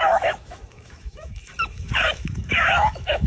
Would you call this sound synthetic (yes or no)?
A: yes